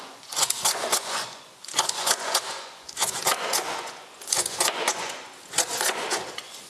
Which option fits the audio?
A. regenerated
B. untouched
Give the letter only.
A